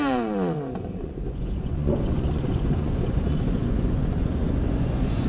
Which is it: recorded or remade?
remade